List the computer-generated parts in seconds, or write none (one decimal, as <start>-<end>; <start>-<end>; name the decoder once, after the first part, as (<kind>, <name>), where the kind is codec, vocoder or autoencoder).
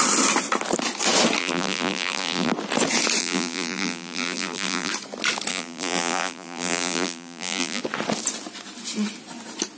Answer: 1.4-2.5 (vocoder, BigVGAN v2); 3.2-4.9; 5.5-7.8